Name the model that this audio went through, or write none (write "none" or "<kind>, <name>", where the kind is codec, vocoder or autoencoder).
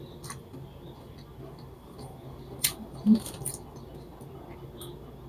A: none